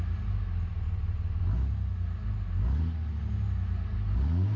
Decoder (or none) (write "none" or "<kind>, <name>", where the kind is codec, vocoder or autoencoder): none